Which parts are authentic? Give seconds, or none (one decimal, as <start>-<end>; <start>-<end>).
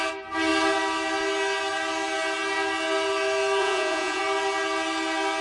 0.0-3.6; 4.2-5.4